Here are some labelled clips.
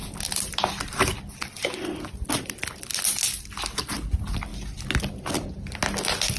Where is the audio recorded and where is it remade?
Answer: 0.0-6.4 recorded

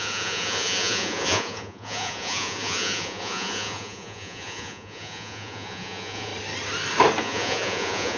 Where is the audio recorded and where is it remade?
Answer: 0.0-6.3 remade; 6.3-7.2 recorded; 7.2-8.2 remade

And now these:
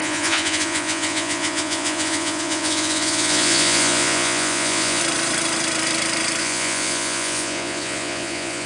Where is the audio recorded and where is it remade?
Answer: 0.0-5.0 remade; 5.0-6.4 recorded; 6.4-8.7 remade

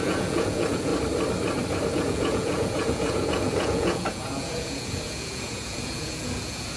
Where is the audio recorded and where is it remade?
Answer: 0.0-0.9 remade; 0.9-1.9 recorded; 1.9-6.8 remade

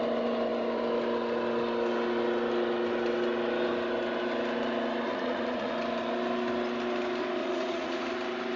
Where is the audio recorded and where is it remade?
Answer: 0.0-5.1 recorded; 5.1-5.7 remade; 5.7-7.4 recorded; 7.4-8.1 remade; 8.1-8.6 recorded

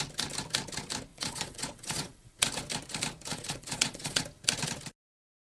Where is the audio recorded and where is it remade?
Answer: 0.0-1.1 recorded; 1.1-2.4 remade; 2.4-3.3 recorded; 3.3-4.2 remade; 4.2-5.4 recorded

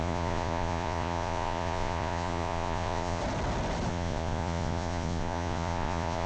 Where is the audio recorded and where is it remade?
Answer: 0.0-3.2 remade; 3.2-3.9 recorded; 3.9-6.3 remade